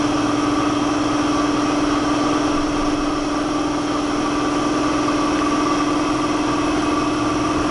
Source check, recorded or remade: recorded